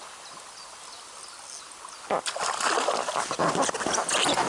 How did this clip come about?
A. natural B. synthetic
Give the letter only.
A